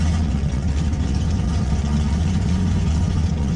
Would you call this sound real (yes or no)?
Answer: no